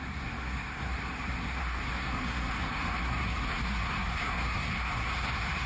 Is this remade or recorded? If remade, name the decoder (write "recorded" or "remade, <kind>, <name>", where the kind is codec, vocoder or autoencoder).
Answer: remade, codec, SNAC